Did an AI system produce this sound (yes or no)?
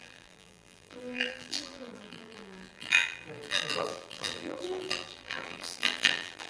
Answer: yes